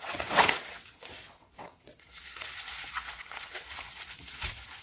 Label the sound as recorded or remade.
remade